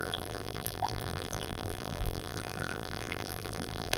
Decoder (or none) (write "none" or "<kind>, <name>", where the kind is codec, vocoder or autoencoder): vocoder, BigVGAN v2